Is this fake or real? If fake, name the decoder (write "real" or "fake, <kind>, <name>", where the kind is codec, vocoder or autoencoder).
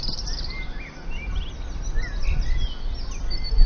real